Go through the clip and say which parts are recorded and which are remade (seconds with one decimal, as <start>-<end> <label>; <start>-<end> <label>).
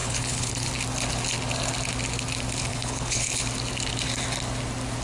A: 0.0-0.7 remade; 0.7-2.7 recorded; 2.7-3.4 remade; 3.4-5.0 recorded